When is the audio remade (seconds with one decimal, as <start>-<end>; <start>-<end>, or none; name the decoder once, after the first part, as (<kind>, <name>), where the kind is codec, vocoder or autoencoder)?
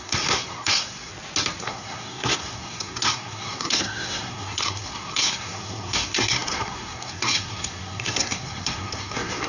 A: 0.0-1.1 (codec, SNAC); 1.6-9.5